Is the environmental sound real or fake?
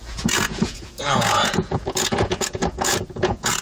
fake